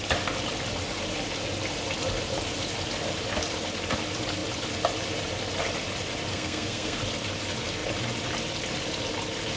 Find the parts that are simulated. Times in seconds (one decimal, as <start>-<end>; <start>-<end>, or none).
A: 6.3-7.0